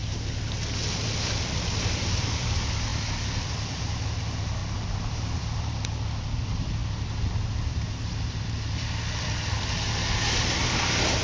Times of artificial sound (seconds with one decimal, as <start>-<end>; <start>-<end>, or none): 0.9-4.6; 5.1-6.8; 7.5-11.2